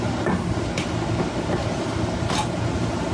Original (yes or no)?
yes